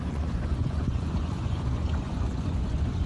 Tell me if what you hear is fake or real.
fake